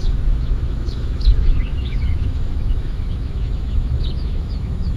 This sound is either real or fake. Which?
fake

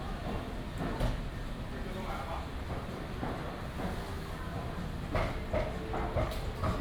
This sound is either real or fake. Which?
real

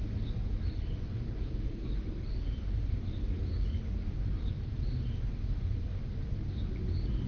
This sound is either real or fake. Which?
real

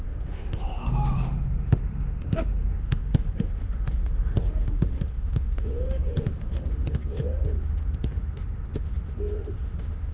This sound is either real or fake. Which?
fake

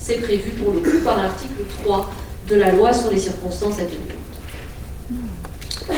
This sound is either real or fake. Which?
real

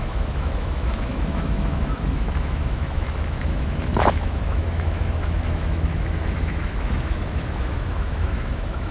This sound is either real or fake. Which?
fake